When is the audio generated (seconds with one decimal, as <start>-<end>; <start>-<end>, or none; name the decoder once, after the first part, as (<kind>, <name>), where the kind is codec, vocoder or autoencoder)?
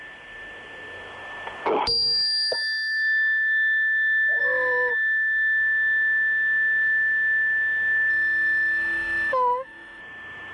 4.4-4.9 (autoencoder, DAC-VAE); 8.1-10.0